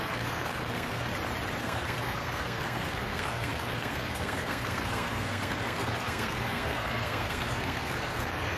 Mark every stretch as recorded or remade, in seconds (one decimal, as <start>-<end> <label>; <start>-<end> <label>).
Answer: 0.0-1.1 remade; 1.1-1.6 recorded; 1.6-8.6 remade